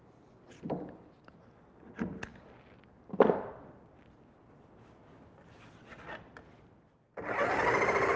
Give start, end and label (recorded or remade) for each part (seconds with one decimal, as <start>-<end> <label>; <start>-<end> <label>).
0.0-8.2 recorded